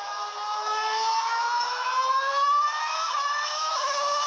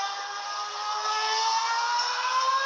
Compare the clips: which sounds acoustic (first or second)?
second